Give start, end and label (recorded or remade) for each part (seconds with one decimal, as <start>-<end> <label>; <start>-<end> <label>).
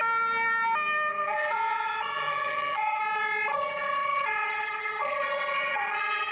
0.0-1.1 recorded; 1.1-3.0 remade; 3.0-3.5 recorded; 3.5-6.3 remade